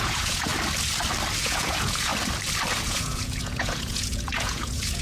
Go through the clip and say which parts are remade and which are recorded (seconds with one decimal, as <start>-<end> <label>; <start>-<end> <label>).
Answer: 0.0-0.5 remade; 0.5-1.4 recorded; 1.4-2.1 remade; 2.1-2.8 recorded; 2.8-5.0 remade